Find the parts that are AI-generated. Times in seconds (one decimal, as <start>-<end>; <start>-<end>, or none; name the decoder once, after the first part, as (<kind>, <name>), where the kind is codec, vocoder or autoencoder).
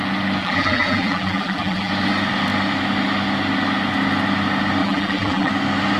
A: 0.4-1.9 (vocoder, BigVGAN v2); 4.8-5.5